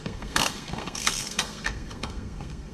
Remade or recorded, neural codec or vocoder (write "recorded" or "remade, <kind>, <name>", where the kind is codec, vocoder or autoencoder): remade, codec, SNAC